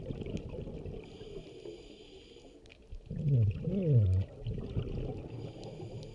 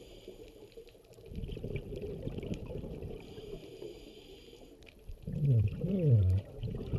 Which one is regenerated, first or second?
second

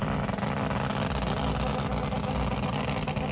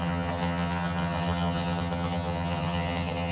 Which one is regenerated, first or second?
second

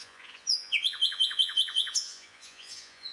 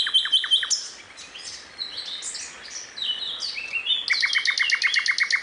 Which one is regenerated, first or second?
first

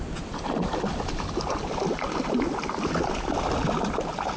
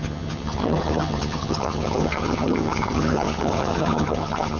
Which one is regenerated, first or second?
second